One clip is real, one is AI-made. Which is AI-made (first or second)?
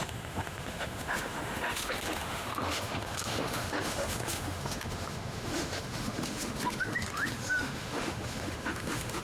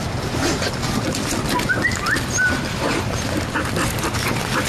first